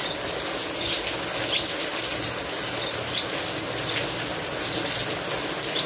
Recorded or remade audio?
recorded